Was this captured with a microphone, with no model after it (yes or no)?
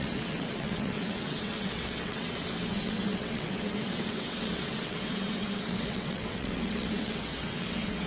no